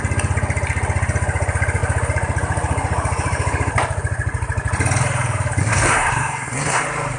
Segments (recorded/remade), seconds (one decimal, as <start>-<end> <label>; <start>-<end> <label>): 0.0-5.6 recorded; 5.6-6.8 remade; 6.8-7.2 recorded